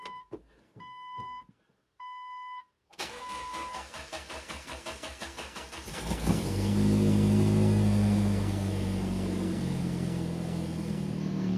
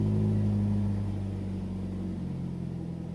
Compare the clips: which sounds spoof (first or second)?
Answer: first